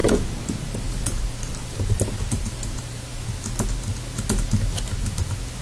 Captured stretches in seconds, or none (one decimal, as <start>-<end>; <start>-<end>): 3.3-5.6